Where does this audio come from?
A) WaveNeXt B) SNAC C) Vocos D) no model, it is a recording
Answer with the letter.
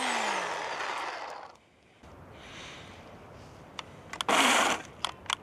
D